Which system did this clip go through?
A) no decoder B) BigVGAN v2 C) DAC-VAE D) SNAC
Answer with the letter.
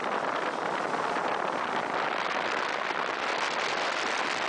A